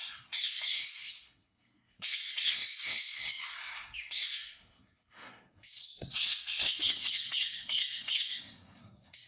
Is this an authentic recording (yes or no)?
no